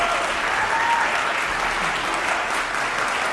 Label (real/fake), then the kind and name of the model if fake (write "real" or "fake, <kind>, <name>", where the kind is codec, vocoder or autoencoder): real